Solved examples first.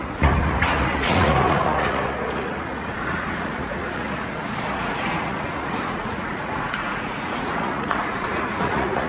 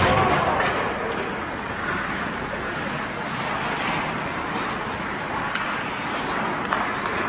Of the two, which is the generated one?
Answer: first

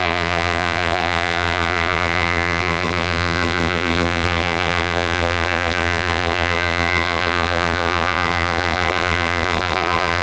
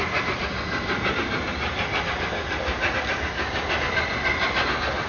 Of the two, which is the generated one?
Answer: first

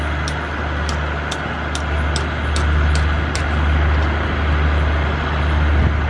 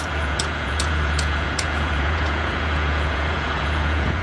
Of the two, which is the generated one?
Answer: second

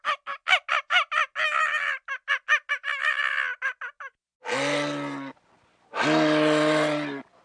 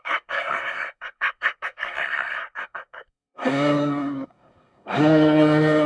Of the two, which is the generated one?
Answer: second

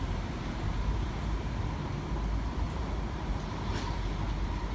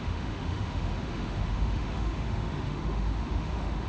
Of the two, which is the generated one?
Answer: second